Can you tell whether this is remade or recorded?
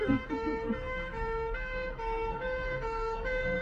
remade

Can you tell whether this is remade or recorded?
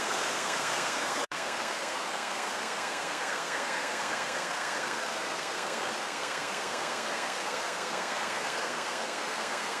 remade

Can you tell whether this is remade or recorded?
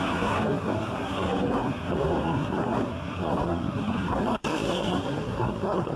remade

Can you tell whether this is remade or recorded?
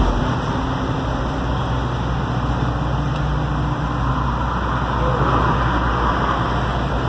recorded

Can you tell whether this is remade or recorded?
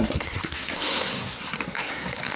remade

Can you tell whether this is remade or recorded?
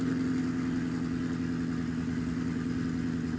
recorded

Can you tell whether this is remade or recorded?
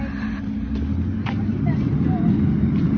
recorded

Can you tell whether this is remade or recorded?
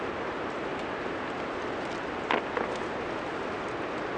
recorded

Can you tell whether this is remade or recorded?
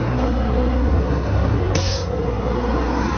remade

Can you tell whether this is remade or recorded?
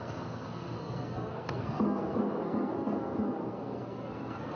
remade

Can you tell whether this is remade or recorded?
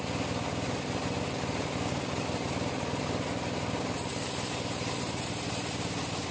recorded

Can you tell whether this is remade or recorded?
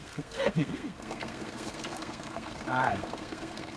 remade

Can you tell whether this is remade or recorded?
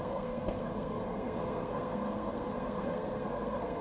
remade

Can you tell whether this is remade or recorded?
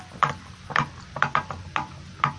recorded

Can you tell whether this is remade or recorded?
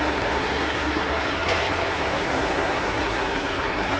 remade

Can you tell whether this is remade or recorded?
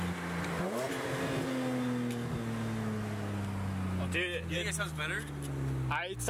recorded